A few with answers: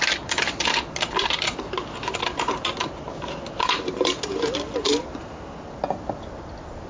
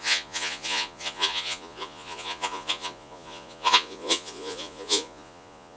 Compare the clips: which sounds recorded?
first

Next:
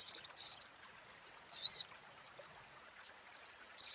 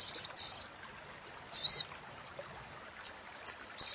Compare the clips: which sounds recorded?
second